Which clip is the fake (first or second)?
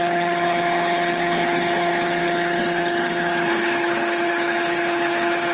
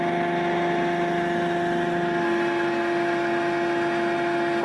first